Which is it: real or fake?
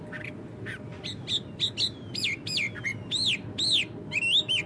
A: real